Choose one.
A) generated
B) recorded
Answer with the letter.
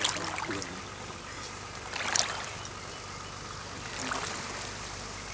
B